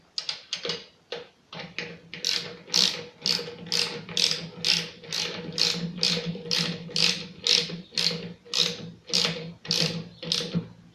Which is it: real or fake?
real